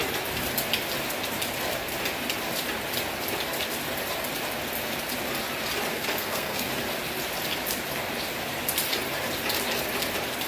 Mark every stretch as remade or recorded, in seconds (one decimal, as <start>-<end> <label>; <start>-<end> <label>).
0.0-5.9 recorded; 5.9-6.7 remade; 6.7-10.5 recorded